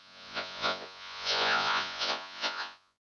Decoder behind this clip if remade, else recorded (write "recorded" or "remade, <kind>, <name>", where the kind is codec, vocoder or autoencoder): remade, vocoder, Vocos